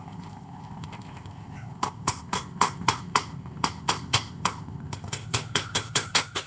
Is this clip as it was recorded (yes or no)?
no